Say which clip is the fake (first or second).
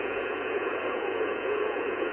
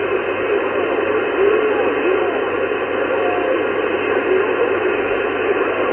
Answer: first